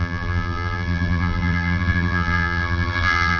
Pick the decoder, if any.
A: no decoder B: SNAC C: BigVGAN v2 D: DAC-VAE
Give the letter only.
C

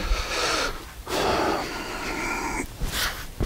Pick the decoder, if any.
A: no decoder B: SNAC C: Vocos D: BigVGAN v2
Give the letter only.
A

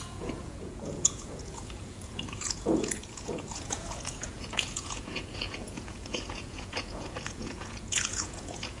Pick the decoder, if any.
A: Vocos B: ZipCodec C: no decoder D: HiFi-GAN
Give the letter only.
A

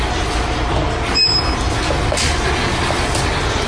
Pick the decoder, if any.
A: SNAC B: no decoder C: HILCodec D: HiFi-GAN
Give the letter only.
B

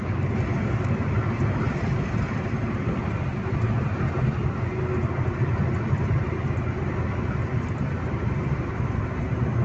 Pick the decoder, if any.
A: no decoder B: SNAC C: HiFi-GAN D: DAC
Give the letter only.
A